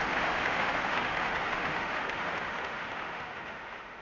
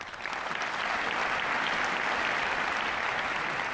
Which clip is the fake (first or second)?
first